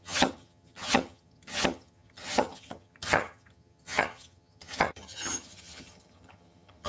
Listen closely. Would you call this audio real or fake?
fake